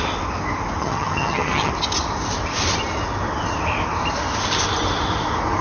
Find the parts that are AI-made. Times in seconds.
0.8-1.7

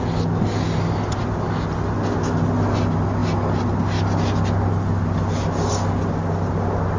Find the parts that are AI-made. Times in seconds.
none

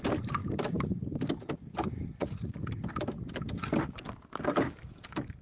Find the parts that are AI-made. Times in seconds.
2.2-2.7

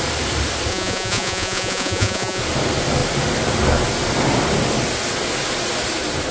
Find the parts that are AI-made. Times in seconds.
0.7-2.4

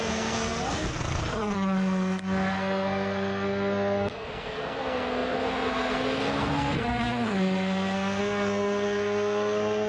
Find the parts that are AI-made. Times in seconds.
0.0-9.9

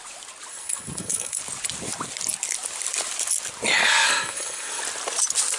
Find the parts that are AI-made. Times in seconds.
0.5-1.4; 3.8-4.8